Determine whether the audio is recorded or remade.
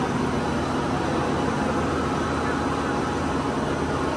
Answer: recorded